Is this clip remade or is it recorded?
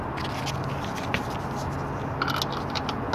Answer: recorded